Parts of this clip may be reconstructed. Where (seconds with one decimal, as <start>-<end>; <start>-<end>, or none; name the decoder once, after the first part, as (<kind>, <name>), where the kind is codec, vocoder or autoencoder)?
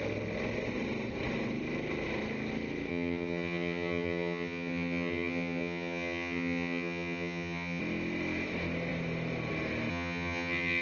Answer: 2.9-7.8 (vocoder, HiFi-GAN); 9.9-10.8